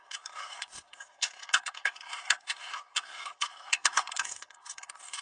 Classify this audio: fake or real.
fake